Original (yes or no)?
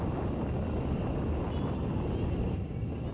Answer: yes